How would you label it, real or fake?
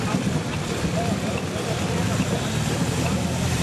fake